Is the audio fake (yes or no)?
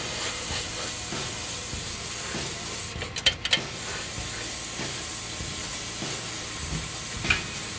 no